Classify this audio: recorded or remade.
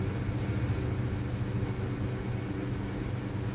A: recorded